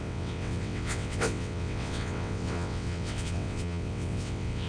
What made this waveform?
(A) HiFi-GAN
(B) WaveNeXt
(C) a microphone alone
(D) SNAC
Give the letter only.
B